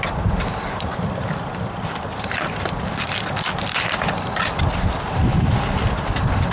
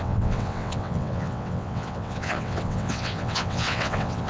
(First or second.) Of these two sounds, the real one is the first